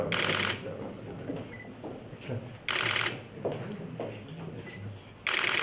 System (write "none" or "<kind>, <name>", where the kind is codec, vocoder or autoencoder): none